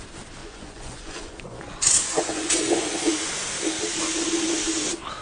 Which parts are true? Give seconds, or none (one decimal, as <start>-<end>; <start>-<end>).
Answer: 0.0-0.4; 3.3-5.2